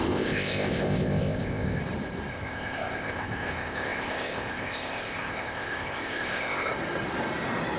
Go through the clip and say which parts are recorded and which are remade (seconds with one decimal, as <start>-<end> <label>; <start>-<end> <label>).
0.0-1.8 remade; 1.8-2.3 recorded; 2.3-6.7 remade; 6.7-7.8 recorded